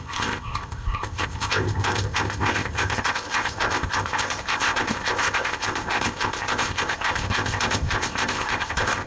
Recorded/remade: remade